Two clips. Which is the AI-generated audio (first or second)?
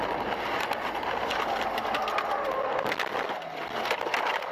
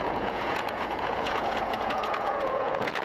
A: second